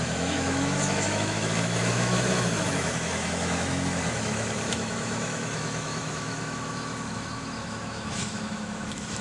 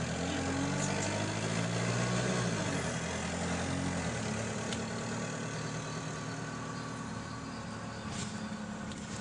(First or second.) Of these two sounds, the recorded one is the second